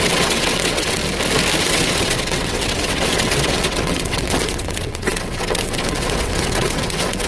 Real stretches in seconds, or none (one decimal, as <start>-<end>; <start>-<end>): 1.0-1.6

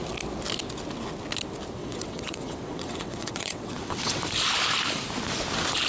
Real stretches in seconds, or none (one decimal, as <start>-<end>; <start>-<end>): 0.0-1.8; 4.2-5.9

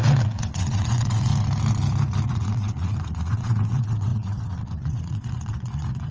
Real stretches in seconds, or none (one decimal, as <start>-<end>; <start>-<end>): 1.3-2.3

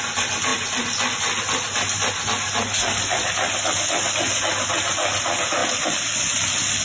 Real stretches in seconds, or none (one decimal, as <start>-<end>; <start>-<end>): 0.0-6.8

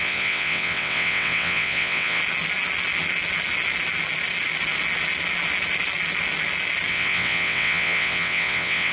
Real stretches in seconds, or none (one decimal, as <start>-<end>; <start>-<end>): 2.2-6.9

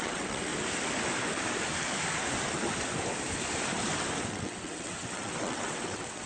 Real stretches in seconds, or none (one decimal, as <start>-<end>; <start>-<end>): 0.5-4.3

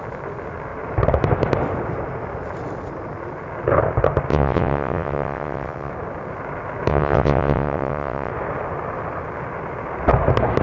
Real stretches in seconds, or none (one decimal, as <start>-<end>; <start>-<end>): 0.0-4.3; 5.9-6.9; 8.3-10.6

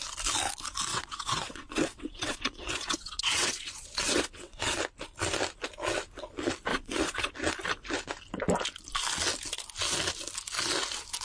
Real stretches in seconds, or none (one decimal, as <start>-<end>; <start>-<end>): 0.0-0.9; 4.8-6.7; 7.3-11.2